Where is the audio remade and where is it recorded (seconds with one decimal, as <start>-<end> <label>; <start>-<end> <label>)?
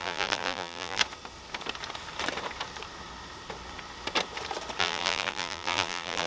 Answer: 0.0-1.0 remade; 1.0-4.8 recorded; 4.8-6.3 remade